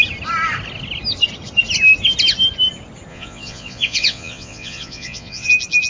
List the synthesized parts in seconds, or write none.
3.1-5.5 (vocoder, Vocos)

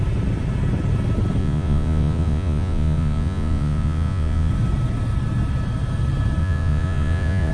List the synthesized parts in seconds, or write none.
1.4-4.5 (vocoder, Vocos); 6.4-7.5

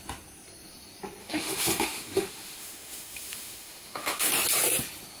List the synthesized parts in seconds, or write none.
1.2-4.3 (autoencoder, DAC-VAE)

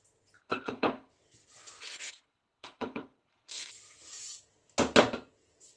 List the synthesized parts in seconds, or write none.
0.4-1.1 (codec, HILCodec); 1.8-3.7

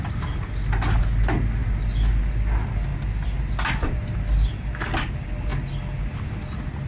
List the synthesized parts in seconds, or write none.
none

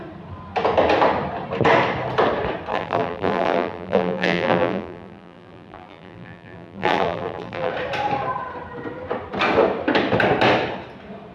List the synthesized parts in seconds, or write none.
2.7-7.7 (vocoder, BigVGAN v2)

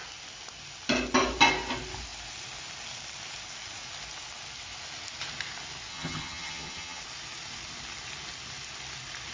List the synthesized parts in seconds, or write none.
5.9-7.0 (vocoder, HiFi-GAN)